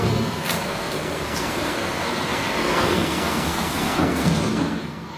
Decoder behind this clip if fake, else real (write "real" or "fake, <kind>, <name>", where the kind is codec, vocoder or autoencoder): fake, codec, SNAC